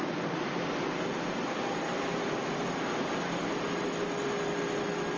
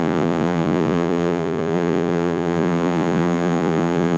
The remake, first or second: second